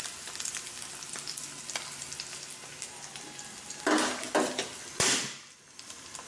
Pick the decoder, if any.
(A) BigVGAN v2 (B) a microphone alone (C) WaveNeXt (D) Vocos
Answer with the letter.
B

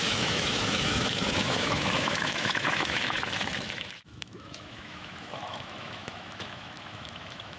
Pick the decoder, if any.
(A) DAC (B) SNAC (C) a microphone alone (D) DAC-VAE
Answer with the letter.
D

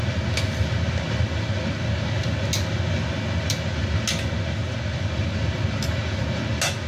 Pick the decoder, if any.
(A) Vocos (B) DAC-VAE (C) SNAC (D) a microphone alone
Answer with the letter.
D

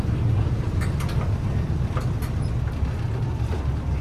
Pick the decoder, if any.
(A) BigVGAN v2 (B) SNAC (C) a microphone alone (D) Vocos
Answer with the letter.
C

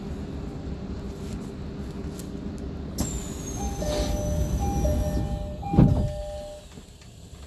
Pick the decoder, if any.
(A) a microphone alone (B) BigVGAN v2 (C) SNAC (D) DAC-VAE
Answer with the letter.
A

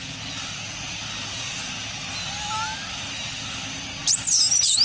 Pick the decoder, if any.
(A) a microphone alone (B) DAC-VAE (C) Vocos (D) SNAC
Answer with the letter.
A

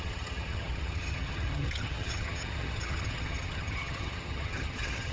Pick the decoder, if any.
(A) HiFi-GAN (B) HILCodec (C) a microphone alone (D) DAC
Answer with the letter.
A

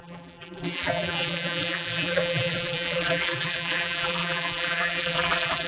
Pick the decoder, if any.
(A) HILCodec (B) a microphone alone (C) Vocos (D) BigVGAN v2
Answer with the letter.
D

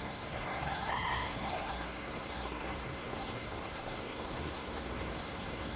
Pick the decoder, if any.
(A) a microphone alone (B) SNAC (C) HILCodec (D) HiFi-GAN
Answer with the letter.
B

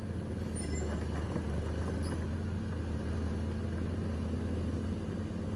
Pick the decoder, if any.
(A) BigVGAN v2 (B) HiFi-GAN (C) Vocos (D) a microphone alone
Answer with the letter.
D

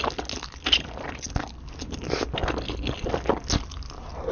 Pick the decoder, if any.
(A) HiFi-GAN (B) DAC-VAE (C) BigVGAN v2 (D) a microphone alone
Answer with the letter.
D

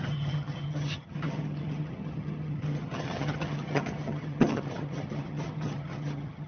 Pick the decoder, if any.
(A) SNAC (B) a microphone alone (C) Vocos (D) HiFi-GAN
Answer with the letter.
D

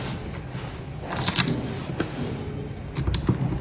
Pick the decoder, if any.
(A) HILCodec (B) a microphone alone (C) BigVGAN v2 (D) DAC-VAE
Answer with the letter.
B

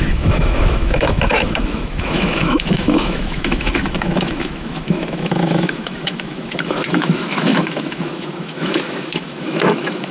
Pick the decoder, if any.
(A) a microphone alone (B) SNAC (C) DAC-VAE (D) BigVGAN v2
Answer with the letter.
C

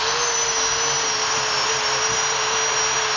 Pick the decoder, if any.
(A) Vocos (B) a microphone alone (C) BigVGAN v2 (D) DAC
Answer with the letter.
B